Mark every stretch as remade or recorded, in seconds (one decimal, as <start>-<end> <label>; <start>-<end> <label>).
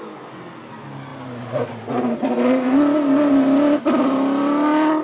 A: 0.0-5.0 recorded